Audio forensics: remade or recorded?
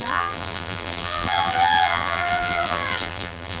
remade